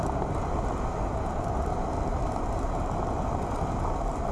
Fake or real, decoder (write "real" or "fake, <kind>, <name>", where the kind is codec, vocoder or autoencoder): real